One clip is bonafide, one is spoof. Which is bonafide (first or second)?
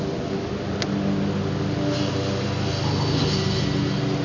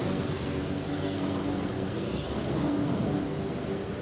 first